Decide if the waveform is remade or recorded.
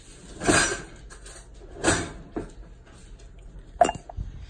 recorded